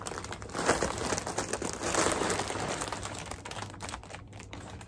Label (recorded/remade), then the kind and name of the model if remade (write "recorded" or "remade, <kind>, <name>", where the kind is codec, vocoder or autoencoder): remade, vocoder, BigVGAN v2